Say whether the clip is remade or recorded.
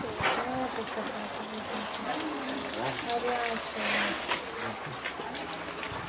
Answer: recorded